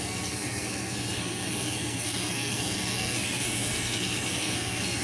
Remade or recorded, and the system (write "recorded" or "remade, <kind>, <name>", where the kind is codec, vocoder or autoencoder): remade, codec, SNAC